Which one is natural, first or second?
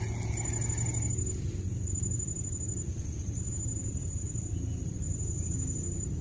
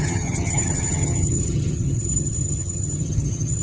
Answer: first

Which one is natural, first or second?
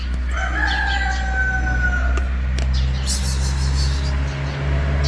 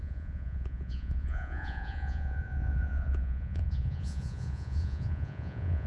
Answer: first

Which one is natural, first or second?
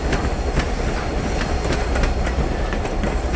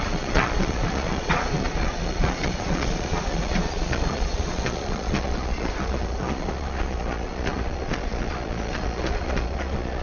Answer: first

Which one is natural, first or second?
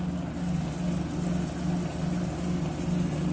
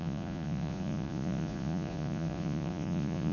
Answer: first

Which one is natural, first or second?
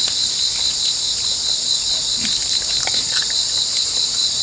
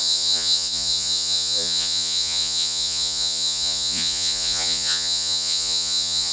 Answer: first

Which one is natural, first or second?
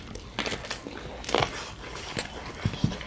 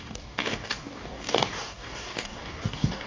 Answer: first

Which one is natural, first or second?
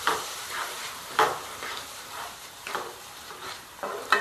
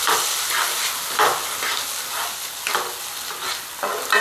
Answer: second